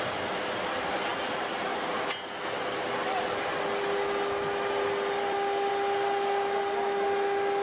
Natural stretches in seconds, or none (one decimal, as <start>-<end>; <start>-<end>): 0.0-7.6